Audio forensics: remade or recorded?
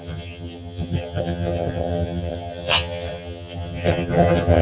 remade